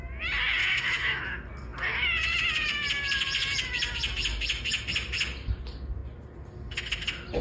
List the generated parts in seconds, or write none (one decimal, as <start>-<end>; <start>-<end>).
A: 0.6-1.2

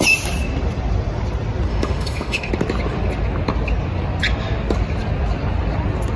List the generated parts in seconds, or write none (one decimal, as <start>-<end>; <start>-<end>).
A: 1.7-2.5

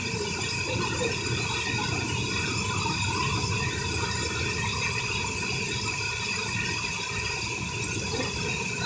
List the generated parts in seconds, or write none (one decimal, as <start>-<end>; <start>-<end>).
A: none